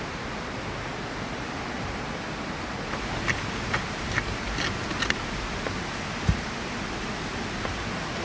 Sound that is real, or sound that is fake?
real